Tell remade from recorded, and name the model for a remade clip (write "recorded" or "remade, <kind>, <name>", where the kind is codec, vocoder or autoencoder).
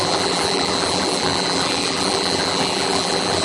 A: remade, vocoder, BigVGAN v2